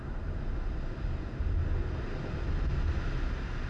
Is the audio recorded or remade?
recorded